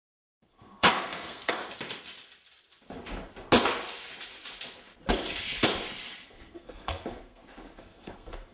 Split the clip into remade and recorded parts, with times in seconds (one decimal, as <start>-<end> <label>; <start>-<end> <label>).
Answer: 0.0-1.6 remade; 1.6-6.2 recorded; 6.2-8.5 remade